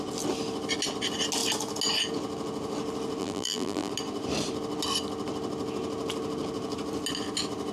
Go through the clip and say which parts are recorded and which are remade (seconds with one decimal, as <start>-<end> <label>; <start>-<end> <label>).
0.0-3.2 recorded; 3.2-3.9 remade; 3.9-7.7 recorded